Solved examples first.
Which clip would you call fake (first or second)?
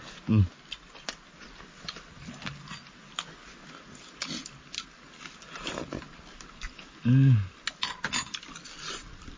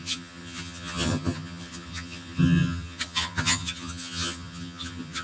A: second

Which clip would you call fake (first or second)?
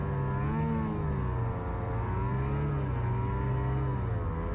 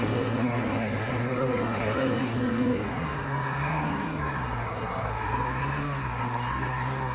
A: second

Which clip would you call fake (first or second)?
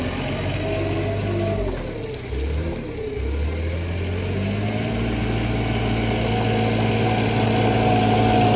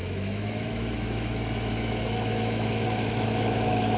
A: second